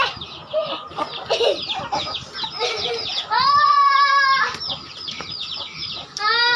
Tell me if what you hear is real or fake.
real